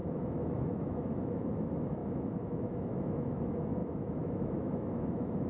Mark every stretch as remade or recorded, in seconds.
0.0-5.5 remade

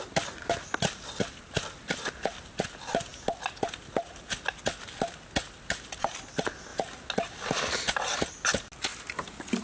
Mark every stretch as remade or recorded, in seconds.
0.0-9.6 recorded

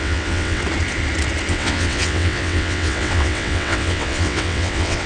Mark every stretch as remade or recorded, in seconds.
0.0-0.6 remade; 0.6-1.5 recorded; 1.5-5.1 remade